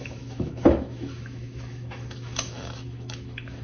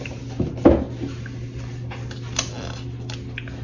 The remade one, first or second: first